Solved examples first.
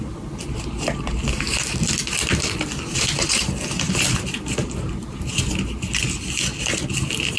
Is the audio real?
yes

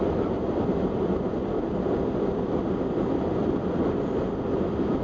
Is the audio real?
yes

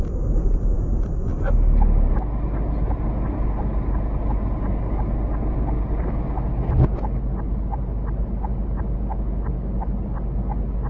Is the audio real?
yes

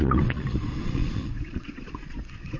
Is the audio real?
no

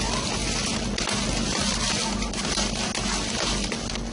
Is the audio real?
yes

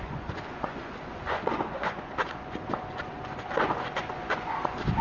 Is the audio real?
no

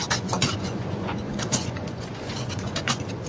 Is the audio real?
no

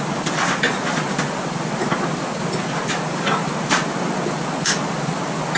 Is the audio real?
yes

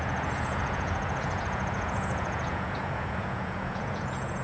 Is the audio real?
no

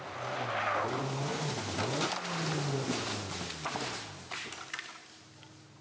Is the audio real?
yes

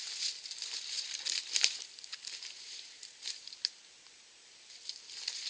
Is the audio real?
yes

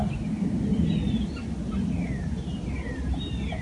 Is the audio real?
yes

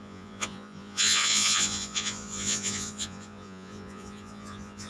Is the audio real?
no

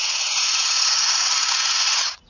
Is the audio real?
no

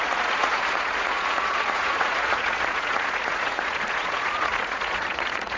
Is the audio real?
no